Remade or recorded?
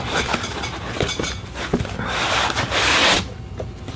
recorded